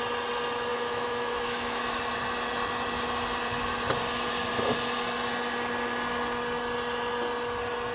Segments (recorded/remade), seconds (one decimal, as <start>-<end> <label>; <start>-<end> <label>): 0.0-0.7 recorded; 0.7-2.0 remade; 2.0-7.9 recorded